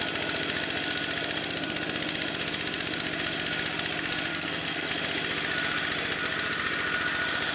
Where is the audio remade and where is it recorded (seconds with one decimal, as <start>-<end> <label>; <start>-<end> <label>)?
0.0-4.3 recorded; 4.3-4.9 remade; 4.9-7.5 recorded